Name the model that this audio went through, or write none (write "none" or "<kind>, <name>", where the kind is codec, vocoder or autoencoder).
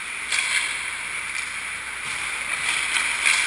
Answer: none